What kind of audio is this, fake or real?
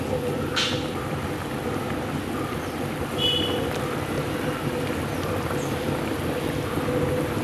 real